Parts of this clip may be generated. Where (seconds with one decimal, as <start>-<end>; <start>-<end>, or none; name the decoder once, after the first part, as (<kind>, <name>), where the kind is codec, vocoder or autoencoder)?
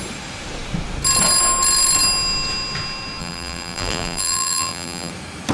3.2-5.1 (vocoder, BigVGAN v2)